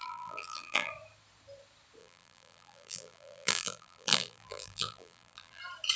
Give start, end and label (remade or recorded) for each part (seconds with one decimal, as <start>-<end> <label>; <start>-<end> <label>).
0.0-0.9 remade; 0.9-2.0 recorded; 2.0-5.6 remade; 5.6-6.0 recorded